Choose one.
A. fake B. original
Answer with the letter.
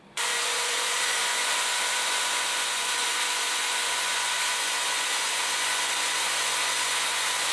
A